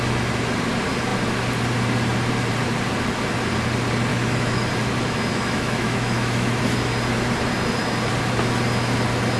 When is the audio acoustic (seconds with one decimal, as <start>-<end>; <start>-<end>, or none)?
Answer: 0.0-4.1; 4.7-5.3; 6.6-9.4